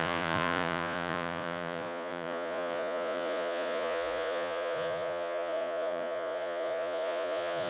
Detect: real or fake fake